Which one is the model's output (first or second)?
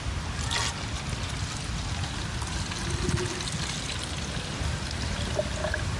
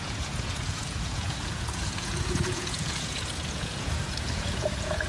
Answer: second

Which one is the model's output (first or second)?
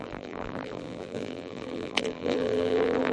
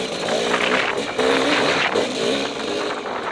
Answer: first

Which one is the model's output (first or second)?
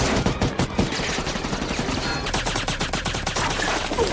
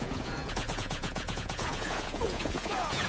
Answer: second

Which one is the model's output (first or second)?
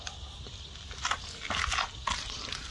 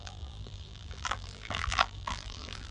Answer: second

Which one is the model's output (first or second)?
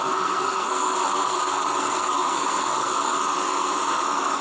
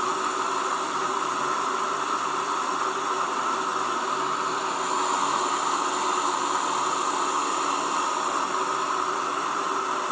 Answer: first